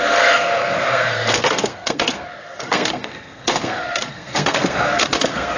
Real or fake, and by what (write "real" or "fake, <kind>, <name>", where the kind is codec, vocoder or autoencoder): fake, codec, SNAC